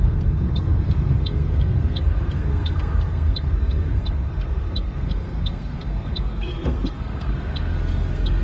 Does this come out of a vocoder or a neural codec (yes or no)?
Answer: yes